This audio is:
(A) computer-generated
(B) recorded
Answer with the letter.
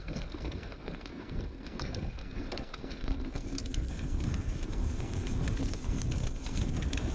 A